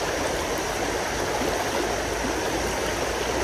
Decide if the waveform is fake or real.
real